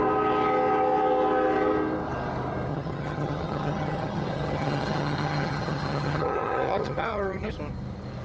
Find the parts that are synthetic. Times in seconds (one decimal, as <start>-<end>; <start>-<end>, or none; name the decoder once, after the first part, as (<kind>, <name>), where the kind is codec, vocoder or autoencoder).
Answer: 2.7-7.5 (vocoder, HiFi-GAN)